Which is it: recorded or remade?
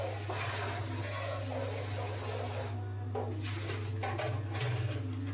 recorded